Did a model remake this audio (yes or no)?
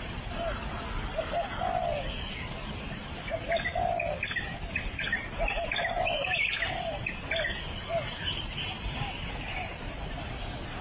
no